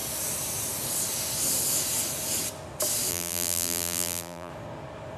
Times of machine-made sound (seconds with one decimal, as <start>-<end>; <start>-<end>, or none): 3.1-4.5